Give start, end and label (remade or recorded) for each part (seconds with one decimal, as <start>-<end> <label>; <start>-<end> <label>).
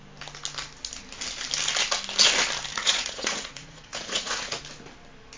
0.0-2.7 recorded; 2.7-4.6 remade; 4.6-5.4 recorded